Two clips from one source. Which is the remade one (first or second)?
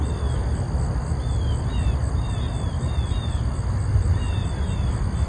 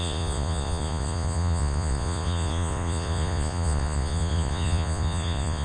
second